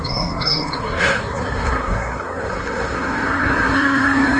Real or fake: fake